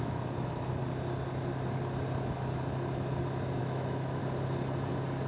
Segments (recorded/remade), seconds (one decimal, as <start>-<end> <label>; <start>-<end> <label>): 0.0-0.8 remade; 0.8-3.6 recorded; 3.6-4.2 remade; 4.2-5.3 recorded